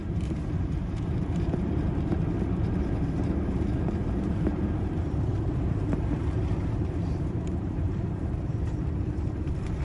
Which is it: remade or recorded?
remade